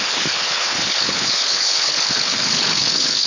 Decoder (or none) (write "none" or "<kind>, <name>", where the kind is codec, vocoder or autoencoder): codec, HILCodec